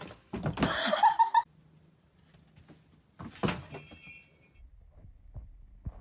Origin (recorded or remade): recorded